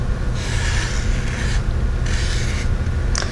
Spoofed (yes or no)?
no